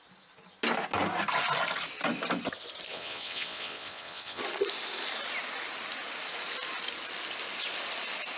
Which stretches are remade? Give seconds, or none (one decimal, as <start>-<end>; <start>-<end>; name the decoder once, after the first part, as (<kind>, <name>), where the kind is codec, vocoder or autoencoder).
2.9-4.4 (vocoder, WaveNeXt)